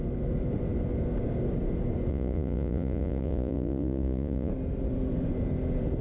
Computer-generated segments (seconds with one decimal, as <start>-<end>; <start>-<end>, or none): 2.1-4.5

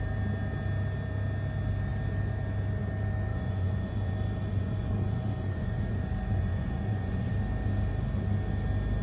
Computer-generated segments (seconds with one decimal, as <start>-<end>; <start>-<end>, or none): 3.3-4.1; 4.5-7.3

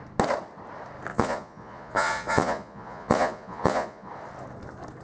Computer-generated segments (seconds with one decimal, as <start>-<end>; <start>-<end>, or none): 1.1-4.1

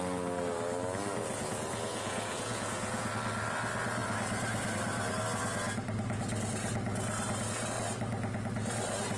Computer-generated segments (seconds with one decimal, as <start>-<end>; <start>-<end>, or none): 1.2-3.1

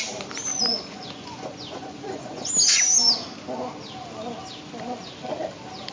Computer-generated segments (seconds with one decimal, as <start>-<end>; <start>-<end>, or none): 0.5-2.5

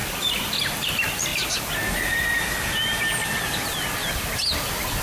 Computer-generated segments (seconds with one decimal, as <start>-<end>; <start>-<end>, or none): none

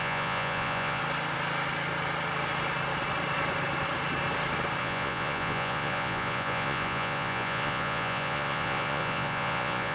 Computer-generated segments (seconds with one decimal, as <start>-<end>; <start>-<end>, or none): 0.0-1.0; 4.8-9.9

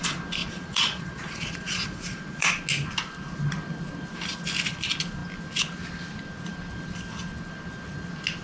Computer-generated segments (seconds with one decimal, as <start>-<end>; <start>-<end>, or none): 0.4-2.5